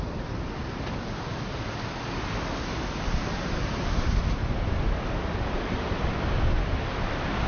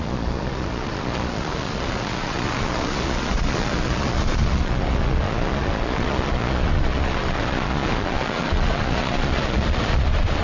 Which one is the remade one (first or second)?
second